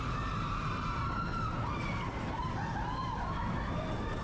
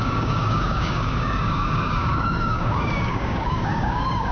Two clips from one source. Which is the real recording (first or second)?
first